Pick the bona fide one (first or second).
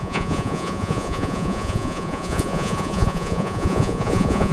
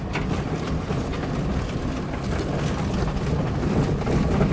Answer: second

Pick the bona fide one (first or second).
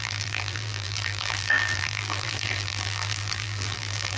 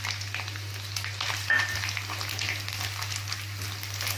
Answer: second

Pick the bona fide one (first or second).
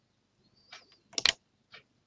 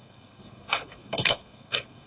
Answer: first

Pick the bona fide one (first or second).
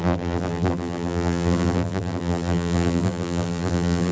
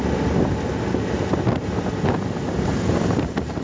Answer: second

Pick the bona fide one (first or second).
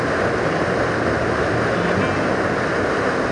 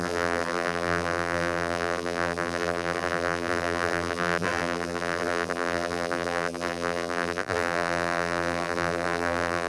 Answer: first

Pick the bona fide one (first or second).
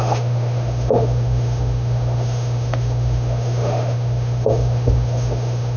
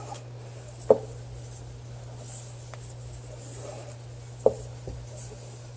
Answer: second